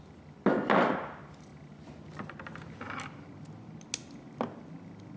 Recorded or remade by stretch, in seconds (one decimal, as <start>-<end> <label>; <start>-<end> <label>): 0.0-5.2 recorded